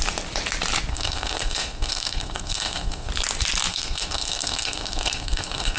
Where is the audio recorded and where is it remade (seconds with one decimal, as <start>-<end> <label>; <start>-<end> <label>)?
0.0-0.9 recorded; 0.9-3.1 remade; 3.1-3.7 recorded; 3.7-5.8 remade